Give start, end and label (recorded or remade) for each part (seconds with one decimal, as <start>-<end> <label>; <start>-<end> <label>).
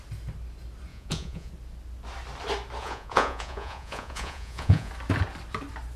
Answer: 0.0-0.9 recorded; 0.9-1.5 remade; 1.5-2.8 recorded; 2.8-4.9 remade; 4.9-6.0 recorded